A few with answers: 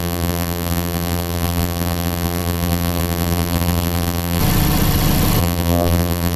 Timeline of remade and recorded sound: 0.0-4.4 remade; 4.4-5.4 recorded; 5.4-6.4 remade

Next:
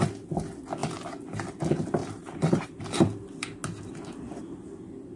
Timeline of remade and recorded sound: 0.0-2.0 recorded; 2.0-2.8 remade; 2.8-5.2 recorded

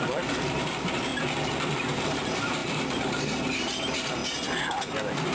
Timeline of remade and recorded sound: 0.0-1.1 remade; 1.1-2.0 recorded; 2.0-4.2 remade; 4.2-4.8 recorded; 4.8-5.3 remade

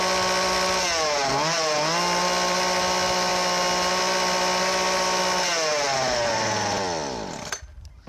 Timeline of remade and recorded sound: 0.0-8.1 recorded

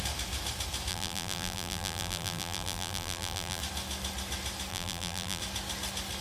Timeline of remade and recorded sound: 0.0-0.9 recorded; 0.9-3.6 remade; 3.6-4.7 recorded; 4.7-5.4 remade; 5.4-6.2 recorded

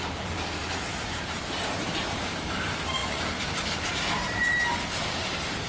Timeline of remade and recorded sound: 0.0-0.9 remade; 0.9-1.4 recorded; 1.4-5.7 remade

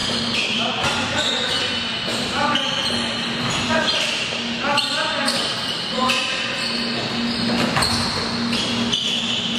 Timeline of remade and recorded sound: 0.0-0.7 remade; 0.7-2.1 recorded; 2.1-4.1 remade; 4.1-4.7 recorded; 4.7-6.5 remade; 6.5-9.6 recorded